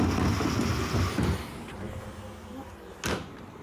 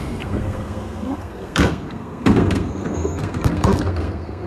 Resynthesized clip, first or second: second